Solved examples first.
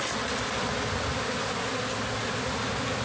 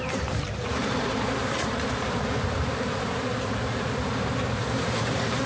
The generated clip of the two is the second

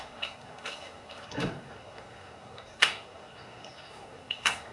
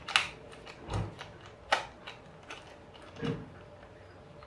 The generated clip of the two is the first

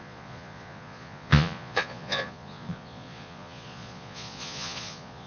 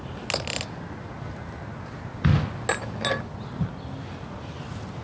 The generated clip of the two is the first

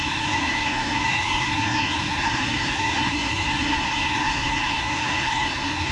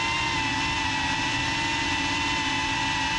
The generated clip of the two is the first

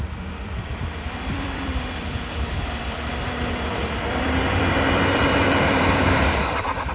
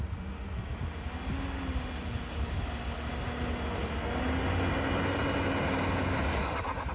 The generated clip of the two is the first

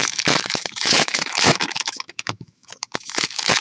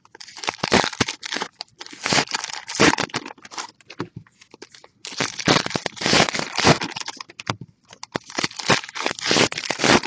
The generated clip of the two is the first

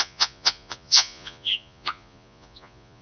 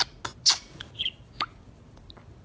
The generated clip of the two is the first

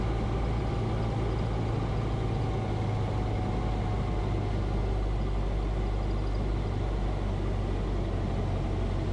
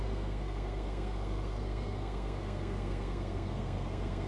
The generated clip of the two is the second